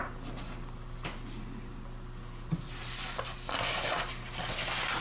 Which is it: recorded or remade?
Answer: recorded